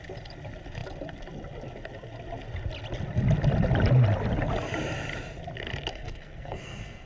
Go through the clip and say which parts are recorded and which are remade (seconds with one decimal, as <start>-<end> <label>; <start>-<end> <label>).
0.0-5.9 recorded; 5.9-7.1 remade